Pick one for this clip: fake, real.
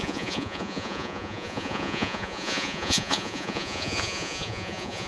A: fake